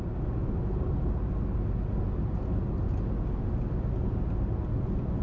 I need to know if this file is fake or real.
real